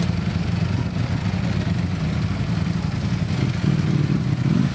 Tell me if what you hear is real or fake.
real